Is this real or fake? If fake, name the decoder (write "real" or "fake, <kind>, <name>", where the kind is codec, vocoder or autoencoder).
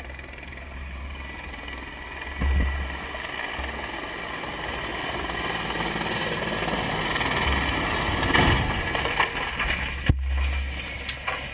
real